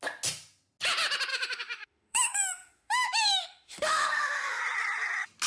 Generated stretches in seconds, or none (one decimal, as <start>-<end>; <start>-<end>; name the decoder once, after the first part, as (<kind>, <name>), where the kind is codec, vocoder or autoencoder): 1.3-4.6 (autoencoder, DAC-VAE)